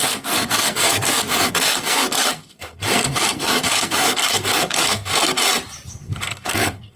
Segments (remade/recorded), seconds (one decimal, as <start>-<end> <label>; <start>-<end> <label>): 0.0-5.1 remade; 5.1-5.9 recorded; 5.9-7.0 remade